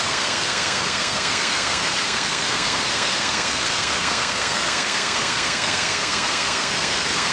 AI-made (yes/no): yes